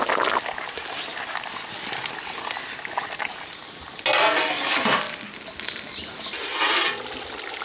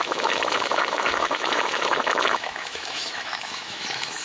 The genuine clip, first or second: first